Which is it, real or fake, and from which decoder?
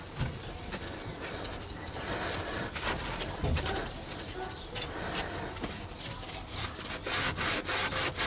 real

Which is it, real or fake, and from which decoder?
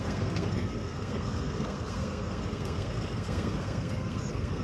fake, codec, SNAC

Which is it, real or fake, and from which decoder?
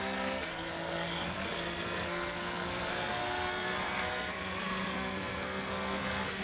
fake, codec, SNAC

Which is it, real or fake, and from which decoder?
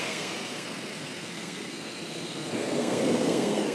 fake, codec, SNAC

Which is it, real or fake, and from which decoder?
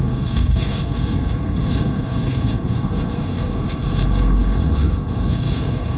fake, codec, SNAC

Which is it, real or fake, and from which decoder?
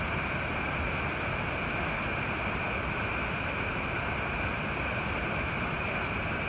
real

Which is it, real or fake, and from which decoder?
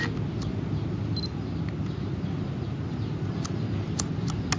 real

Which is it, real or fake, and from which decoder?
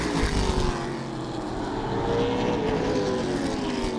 real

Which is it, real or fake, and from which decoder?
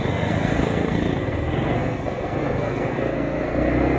fake, codec, SNAC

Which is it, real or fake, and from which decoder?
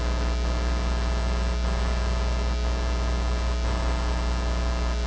real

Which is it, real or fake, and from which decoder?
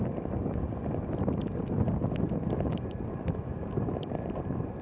real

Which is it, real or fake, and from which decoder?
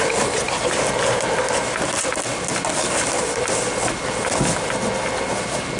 real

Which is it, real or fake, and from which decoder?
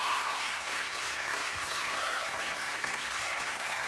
fake, codec, SNAC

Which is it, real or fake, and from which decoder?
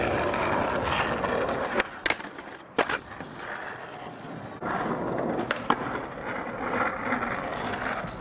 real